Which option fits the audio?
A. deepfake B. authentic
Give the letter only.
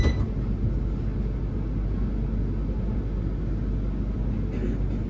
B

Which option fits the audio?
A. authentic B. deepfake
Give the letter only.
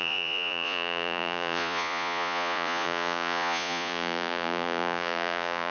B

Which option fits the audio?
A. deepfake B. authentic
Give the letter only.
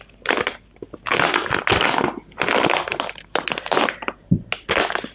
B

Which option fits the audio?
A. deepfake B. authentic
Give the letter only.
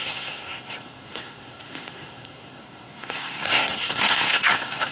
A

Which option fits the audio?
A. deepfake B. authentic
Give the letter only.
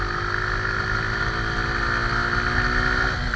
B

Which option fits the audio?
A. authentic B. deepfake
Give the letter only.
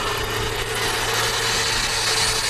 A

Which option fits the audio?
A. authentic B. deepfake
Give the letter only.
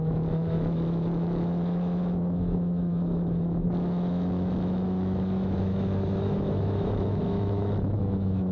B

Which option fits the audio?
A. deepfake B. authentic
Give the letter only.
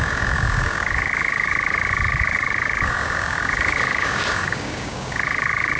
A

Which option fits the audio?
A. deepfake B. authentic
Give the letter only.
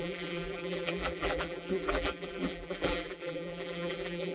A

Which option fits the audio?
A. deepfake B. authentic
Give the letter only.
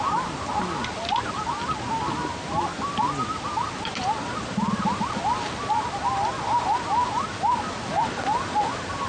B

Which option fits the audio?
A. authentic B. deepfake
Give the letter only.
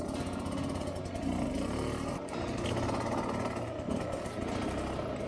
A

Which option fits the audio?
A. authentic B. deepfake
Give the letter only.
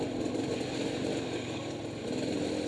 A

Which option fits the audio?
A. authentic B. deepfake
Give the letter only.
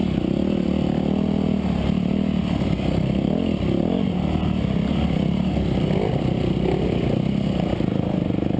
A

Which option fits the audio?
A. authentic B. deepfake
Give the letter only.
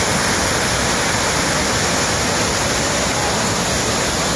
A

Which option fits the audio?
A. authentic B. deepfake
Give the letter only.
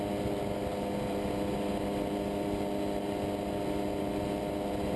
A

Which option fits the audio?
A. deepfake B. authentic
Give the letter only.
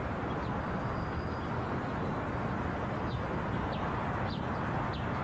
B